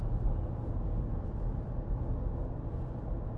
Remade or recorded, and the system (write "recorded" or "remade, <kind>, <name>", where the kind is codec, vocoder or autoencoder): recorded